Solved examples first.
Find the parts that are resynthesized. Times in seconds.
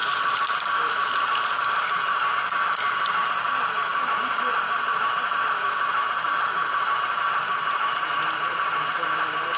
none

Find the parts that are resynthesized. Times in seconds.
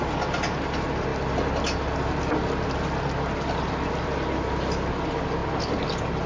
none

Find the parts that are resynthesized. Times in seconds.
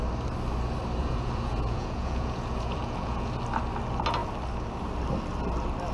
1.0-3.3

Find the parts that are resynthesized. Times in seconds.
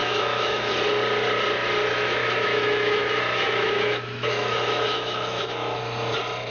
0.0-0.7; 1.9-5.8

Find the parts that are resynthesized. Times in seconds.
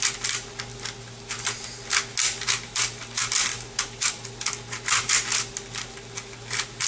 none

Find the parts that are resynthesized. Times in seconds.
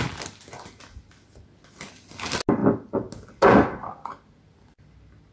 none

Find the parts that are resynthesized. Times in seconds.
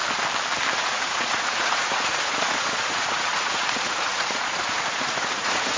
0.7-5.8